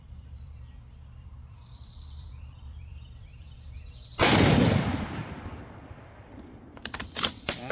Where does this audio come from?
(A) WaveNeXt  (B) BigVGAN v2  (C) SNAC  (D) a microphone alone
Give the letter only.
B